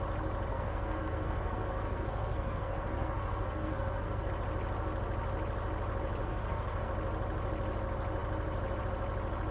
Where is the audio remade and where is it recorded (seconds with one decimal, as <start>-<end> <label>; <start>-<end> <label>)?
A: 0.0-0.5 recorded; 0.5-4.3 remade; 4.3-6.2 recorded; 6.2-6.9 remade; 6.9-9.5 recorded